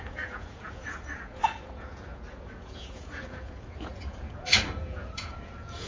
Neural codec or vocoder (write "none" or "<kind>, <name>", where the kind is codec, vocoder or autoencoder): vocoder, Vocos